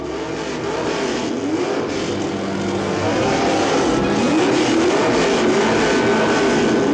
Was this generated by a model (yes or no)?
no